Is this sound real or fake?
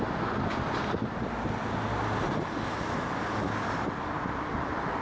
real